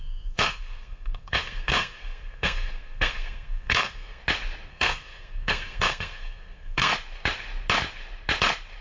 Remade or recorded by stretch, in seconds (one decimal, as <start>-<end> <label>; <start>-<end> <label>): 0.0-4.2 remade; 4.2-4.7 recorded; 4.7-6.9 remade; 6.9-8.8 recorded